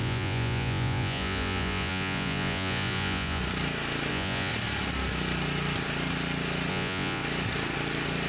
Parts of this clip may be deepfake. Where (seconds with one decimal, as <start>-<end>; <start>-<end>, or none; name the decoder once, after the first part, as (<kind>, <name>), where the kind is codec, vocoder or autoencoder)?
0.0-3.4 (vocoder, Vocos); 4.1-4.5; 6.7-7.2